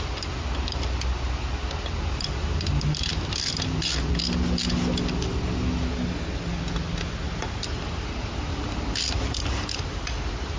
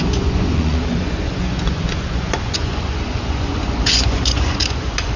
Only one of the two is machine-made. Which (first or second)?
second